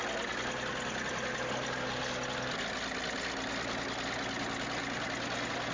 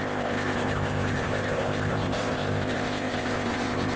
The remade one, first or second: second